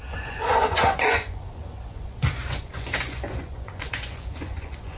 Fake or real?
fake